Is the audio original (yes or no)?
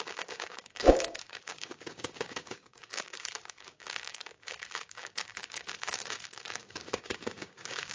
no